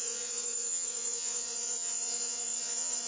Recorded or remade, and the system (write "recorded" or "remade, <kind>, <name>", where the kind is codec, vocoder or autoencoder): remade, vocoder, Vocos